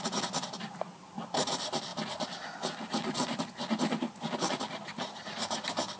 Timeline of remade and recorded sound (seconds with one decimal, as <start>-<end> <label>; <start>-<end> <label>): 0.0-6.0 recorded